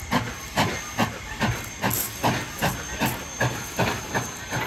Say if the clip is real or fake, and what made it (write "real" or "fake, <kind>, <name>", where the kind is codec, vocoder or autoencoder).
real